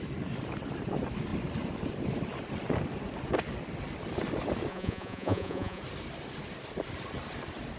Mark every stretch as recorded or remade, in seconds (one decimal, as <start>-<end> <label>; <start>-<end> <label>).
0.0-4.7 recorded; 4.7-5.8 remade; 5.8-7.8 recorded